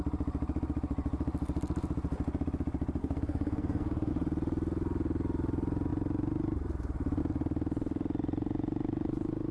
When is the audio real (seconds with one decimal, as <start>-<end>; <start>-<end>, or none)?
0.0-3.0; 4.1-9.5